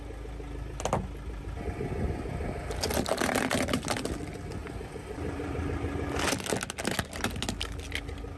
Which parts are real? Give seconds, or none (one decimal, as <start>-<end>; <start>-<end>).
0.0-4.6; 5.7-8.4

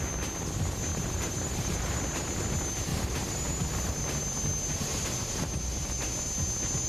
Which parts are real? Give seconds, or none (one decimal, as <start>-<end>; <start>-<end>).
0.0-0.9; 2.0-2.9; 3.4-6.9